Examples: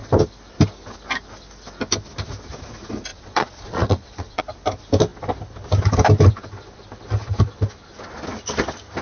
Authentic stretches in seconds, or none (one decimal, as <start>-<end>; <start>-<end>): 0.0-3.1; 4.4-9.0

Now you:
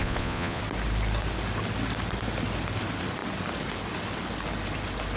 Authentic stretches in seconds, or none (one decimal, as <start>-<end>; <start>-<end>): 0.6-5.2

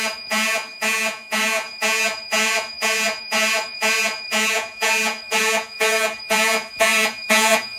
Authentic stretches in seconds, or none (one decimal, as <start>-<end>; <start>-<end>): none